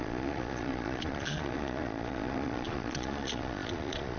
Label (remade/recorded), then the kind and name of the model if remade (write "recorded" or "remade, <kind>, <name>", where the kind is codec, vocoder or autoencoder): remade, vocoder, Vocos